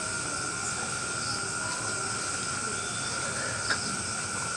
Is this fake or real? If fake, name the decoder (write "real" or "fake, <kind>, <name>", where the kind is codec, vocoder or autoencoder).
real